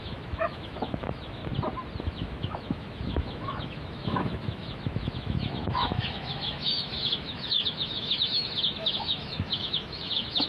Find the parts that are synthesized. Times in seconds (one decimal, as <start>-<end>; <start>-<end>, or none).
0.0-1.4; 2.0-10.5